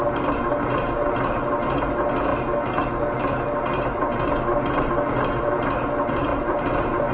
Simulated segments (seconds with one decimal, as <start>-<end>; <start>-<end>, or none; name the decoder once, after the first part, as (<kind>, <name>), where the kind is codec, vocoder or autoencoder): 6.3-7.1 (vocoder, BigVGAN v2)